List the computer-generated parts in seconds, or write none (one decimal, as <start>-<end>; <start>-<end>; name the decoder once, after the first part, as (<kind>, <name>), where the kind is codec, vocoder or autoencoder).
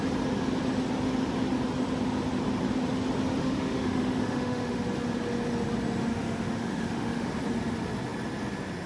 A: 3.4-4.8 (autoencoder, DAC-VAE); 6.1-7.3